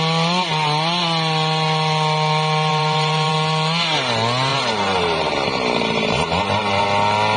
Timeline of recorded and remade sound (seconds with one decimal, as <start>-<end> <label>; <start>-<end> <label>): 0.0-2.7 recorded; 2.7-3.3 remade; 3.3-4.5 recorded; 4.5-6.8 remade; 6.8-7.4 recorded